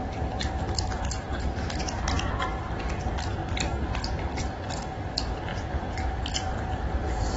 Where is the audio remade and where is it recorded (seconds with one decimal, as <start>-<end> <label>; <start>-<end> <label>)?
0.0-7.4 recorded